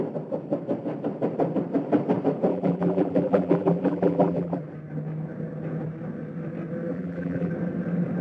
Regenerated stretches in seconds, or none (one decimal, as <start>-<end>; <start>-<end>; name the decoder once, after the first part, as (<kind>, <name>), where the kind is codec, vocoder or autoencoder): 2.5-4.6 (vocoder, BigVGAN v2); 6.9-7.5

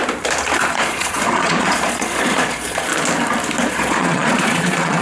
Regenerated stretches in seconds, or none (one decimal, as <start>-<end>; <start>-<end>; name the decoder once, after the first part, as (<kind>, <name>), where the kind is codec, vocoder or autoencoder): 0.7-2.9 (vocoder, Vocos); 3.7-5.0

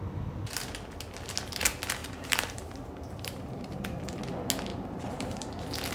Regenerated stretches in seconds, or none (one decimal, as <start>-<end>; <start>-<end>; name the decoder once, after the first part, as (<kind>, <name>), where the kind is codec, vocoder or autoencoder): 2.0-4.2 (vocoder, BigVGAN v2); 4.7-5.5

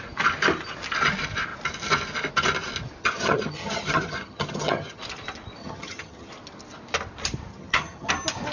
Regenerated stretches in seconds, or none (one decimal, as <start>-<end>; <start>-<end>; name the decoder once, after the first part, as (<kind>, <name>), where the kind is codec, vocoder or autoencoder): 3.0-5.0 (vocoder, HiFi-GAN); 5.6-6.3; 7.5-8.1